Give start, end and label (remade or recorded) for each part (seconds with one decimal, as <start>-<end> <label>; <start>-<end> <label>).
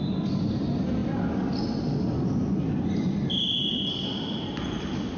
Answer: 0.0-5.2 recorded